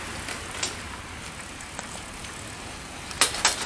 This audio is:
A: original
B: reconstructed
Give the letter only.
A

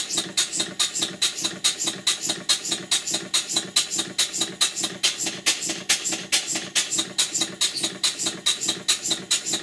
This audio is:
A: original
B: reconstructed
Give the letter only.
A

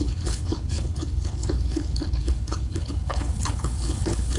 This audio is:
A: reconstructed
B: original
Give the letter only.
A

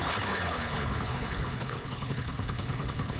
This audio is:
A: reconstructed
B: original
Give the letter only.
A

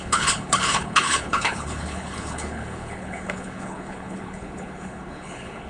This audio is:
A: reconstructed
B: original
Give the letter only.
A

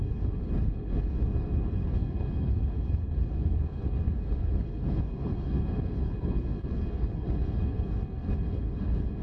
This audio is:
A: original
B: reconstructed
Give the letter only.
B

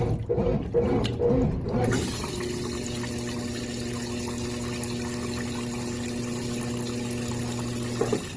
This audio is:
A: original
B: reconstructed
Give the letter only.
A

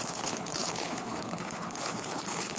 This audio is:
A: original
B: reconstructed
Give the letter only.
B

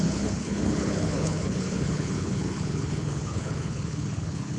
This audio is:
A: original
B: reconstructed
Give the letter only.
B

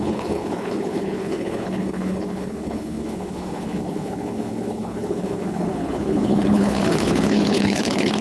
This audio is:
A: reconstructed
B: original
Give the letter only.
A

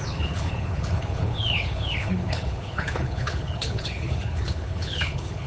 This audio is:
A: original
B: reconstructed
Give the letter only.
B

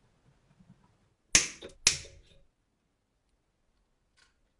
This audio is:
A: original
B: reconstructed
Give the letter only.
A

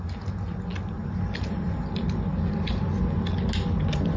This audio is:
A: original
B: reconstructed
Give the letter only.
A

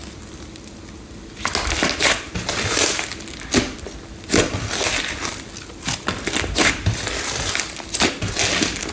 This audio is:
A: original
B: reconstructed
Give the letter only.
A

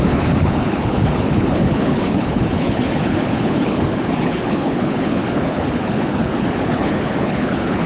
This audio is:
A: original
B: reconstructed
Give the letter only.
B